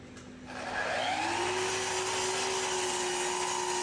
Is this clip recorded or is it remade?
recorded